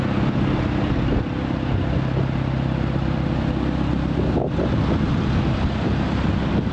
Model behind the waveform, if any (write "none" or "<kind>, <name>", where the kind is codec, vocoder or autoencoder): none